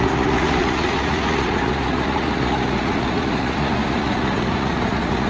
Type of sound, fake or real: fake